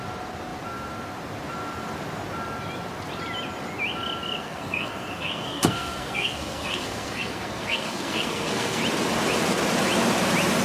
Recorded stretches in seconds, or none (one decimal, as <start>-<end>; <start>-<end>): 0.0-4.4; 8.8-10.6